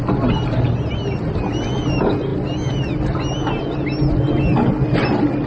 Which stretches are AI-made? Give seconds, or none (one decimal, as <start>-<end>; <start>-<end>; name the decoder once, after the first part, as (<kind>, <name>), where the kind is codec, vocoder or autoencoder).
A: none

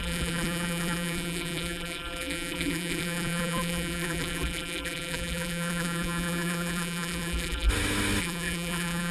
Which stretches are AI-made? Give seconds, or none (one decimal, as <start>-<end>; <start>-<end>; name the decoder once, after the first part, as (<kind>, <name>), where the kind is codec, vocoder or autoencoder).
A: 0.0-7.7 (vocoder, BigVGAN v2); 8.2-9.1

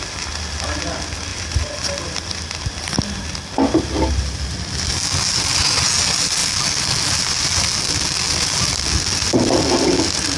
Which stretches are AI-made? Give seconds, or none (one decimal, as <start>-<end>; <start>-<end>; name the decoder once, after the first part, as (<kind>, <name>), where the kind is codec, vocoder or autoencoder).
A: none

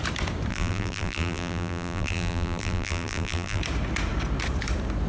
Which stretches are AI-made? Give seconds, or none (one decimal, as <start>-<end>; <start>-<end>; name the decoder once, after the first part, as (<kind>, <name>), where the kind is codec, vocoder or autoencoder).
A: 0.5-3.6 (vocoder, BigVGAN v2)

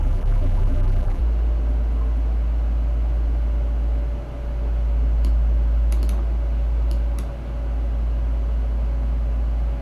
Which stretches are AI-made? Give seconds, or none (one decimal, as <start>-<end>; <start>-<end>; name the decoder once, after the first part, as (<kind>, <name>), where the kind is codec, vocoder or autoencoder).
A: 0.0-1.2 (vocoder, BigVGAN v2)

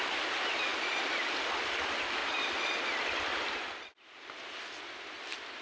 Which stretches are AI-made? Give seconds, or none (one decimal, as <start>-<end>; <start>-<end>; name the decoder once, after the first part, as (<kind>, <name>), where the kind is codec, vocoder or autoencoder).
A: 0.7-1.7 (vocoder, BigVGAN v2); 2.2-4.8

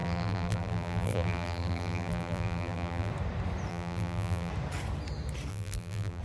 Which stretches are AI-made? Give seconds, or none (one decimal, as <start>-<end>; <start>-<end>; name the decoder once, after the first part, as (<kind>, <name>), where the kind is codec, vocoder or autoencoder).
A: 0.0-3.1 (vocoder, BigVGAN v2); 3.7-4.5; 5.5-6.2

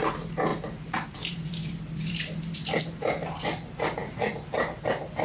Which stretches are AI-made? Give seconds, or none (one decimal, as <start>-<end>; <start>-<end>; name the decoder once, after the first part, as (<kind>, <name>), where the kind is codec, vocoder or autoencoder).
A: 0.5-2.8 (vocoder, BigVGAN v2)